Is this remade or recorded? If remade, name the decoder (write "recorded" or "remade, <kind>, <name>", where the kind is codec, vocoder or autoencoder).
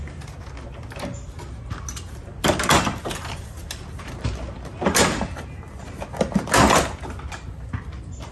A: recorded